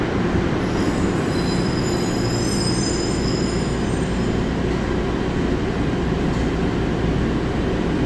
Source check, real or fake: real